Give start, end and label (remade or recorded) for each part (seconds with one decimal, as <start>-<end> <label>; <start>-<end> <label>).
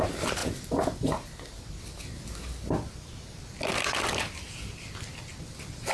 0.0-5.9 recorded